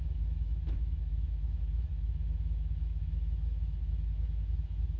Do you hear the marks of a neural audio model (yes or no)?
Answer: yes